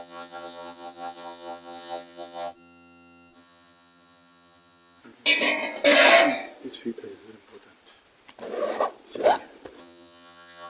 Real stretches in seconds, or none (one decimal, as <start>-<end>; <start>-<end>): 5.0-9.8